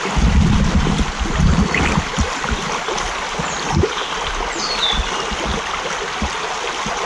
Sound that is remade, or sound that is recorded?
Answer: recorded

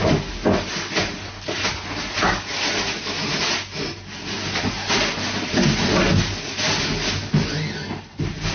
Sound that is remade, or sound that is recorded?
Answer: recorded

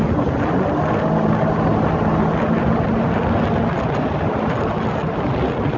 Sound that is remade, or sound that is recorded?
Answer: recorded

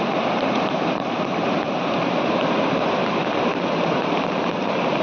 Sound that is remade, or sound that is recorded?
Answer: remade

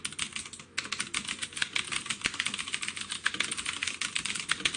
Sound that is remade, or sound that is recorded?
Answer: recorded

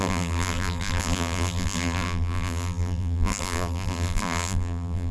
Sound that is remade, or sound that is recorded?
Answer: remade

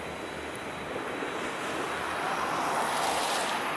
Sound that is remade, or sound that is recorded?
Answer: recorded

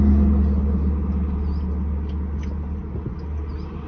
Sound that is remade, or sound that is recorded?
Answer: recorded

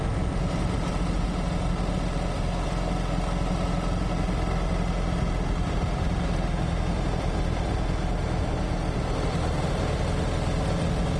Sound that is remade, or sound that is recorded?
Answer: recorded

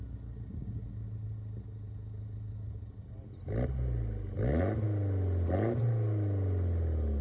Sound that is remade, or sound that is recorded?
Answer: recorded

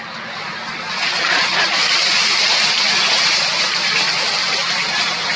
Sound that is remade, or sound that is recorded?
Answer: recorded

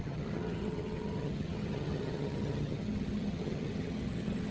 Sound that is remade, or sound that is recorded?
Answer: remade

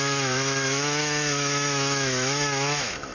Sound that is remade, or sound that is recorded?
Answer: remade